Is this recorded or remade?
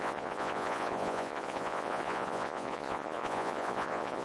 remade